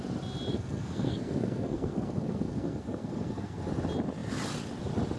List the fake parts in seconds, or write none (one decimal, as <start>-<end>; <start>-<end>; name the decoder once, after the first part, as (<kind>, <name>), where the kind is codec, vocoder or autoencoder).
0.5-3.6 (codec, SNAC)